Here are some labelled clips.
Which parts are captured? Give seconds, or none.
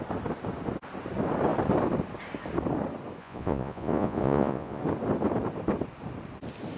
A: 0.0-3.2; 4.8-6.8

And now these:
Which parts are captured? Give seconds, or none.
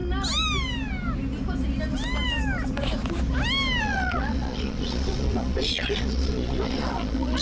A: 0.0-3.8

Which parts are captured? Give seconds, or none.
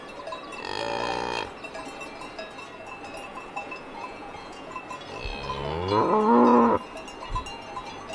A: 0.0-3.3; 4.8-8.1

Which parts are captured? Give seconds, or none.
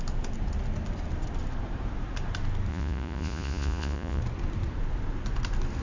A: 0.0-2.7; 4.2-5.8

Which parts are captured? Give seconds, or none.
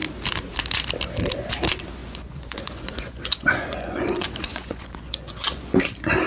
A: 0.0-2.0; 5.8-6.3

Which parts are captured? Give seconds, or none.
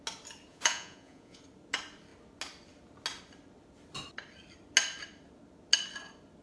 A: 0.0-0.5; 1.4-6.4